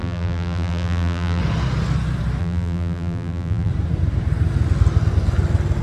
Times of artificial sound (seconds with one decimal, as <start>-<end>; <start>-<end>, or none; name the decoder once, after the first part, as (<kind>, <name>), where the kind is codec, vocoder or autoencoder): 0.0-1.4 (vocoder, BigVGAN v2); 2.4-3.7